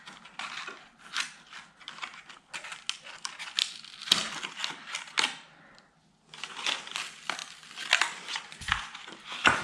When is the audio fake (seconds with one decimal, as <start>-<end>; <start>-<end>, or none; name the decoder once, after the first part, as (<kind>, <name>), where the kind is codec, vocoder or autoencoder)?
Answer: 4.0-5.8 (vocoder, BigVGAN v2); 7.4-8.3